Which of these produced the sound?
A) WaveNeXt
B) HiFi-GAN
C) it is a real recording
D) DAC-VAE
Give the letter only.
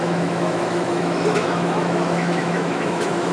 D